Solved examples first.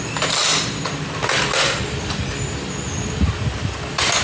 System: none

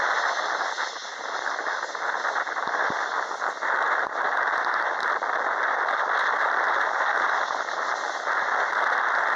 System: none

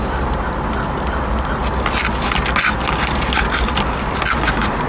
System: none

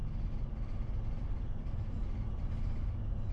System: none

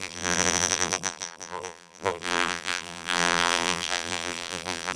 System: vocoder, BigVGAN v2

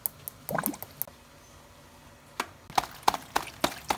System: none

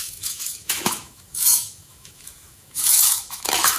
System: autoencoder, DAC-VAE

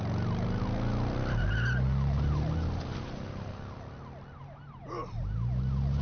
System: none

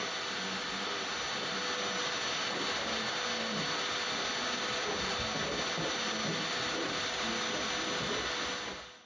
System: none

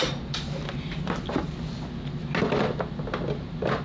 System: none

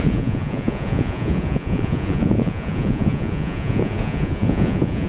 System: vocoder, Vocos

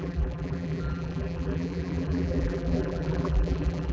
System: vocoder, BigVGAN v2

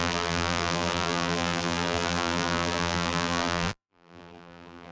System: vocoder, BigVGAN v2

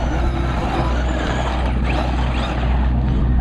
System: none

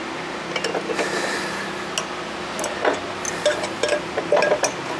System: none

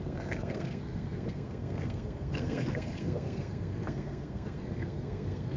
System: codec, SNAC